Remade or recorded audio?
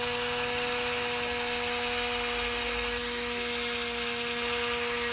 recorded